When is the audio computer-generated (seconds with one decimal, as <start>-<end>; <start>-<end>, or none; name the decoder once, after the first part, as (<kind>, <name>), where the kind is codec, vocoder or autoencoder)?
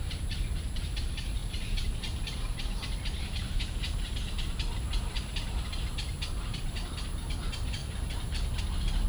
0.0-7.8 (vocoder, BigVGAN v2); 8.6-9.1